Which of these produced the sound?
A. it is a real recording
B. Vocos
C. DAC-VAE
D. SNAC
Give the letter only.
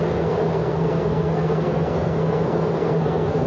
D